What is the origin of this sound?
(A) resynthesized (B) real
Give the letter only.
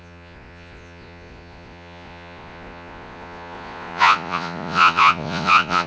A